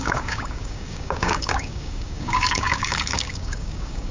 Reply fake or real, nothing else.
fake